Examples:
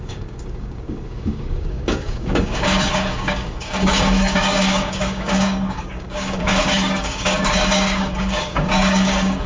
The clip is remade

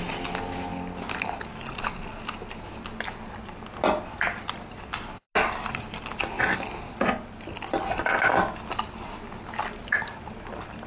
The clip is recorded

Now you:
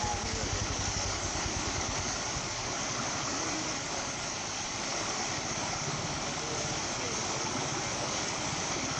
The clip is remade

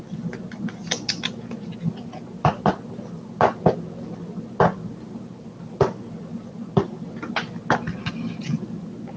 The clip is recorded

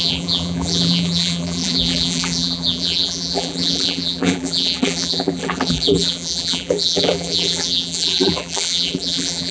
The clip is remade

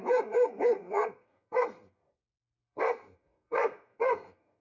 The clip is remade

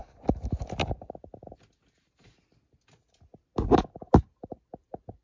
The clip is recorded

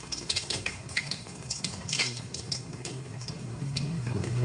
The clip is remade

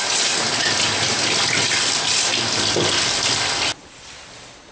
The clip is recorded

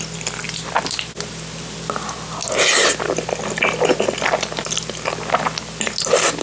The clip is recorded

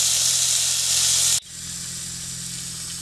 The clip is recorded